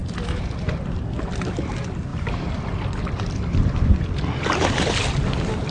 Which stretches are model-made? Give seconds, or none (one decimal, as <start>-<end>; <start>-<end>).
2.1-5.7